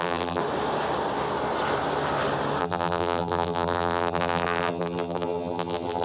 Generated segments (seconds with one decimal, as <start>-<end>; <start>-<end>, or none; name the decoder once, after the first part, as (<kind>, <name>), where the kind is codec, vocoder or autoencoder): 0.0-0.4 (vocoder, BigVGAN v2); 2.6-6.0